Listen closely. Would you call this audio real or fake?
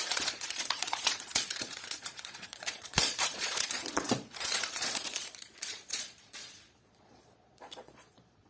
fake